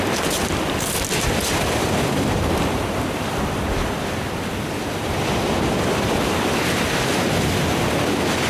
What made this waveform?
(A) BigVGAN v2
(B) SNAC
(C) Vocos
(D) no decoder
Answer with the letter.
A